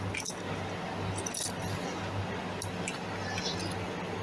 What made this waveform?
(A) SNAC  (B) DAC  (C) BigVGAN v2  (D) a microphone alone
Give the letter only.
D